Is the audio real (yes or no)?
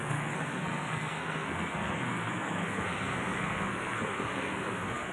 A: no